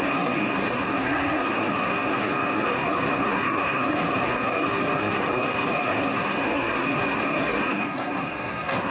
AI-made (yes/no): yes